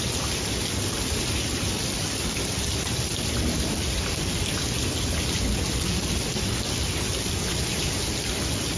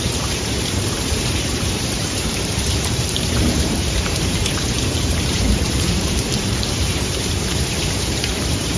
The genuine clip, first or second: first